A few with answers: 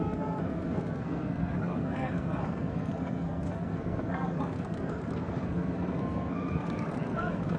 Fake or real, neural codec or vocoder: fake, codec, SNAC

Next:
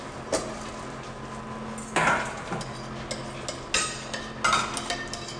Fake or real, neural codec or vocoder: real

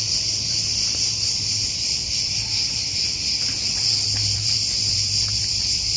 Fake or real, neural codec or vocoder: fake, vocoder, BigVGAN v2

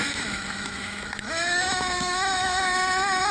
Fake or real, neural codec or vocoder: fake, autoencoder, DAC-VAE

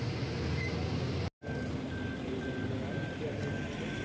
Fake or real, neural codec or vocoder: real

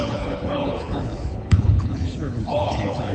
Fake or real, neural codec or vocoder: fake, codec, HILCodec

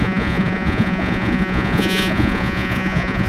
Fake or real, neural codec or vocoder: fake, vocoder, Vocos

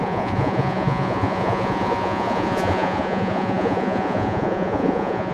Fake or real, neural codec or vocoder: fake, vocoder, Vocos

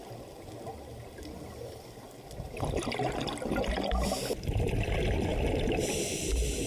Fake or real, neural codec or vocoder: real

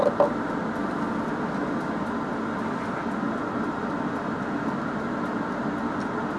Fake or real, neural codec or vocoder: real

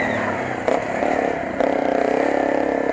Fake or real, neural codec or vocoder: real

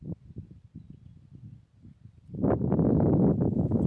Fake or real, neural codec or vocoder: real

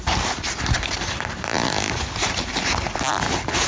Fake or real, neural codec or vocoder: real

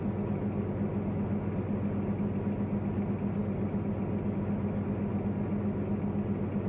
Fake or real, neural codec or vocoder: real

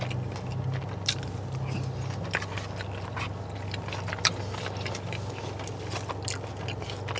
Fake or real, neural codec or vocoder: real